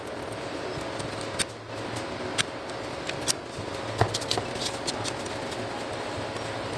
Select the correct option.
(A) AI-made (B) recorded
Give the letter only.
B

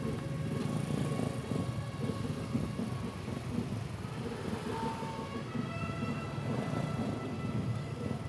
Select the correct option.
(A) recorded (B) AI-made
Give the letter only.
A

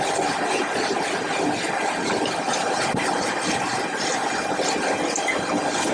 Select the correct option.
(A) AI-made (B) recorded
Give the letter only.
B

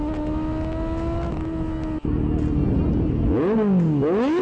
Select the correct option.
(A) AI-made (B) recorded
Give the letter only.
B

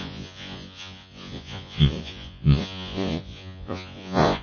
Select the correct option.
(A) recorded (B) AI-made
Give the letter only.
B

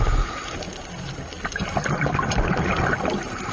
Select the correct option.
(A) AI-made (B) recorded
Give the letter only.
B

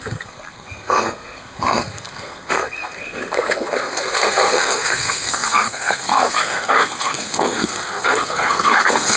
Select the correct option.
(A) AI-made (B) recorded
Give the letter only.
A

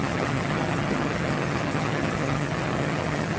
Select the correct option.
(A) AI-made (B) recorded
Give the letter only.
A